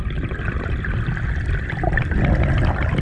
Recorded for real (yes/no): yes